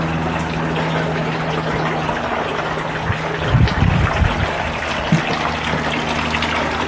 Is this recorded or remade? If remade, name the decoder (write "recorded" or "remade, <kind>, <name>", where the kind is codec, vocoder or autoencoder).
recorded